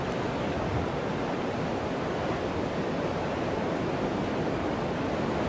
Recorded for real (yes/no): yes